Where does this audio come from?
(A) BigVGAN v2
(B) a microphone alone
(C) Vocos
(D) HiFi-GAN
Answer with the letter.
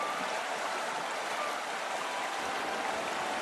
A